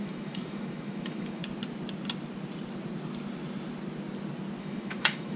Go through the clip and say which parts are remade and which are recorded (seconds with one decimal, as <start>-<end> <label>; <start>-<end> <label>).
0.0-1.4 remade; 1.4-4.6 recorded; 4.6-5.4 remade